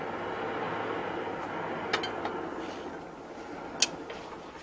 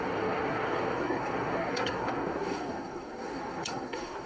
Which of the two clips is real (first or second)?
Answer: first